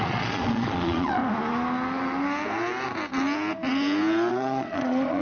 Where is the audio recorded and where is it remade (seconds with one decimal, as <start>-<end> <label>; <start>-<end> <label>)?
0.0-1.2 remade; 1.2-4.3 recorded; 4.3-5.2 remade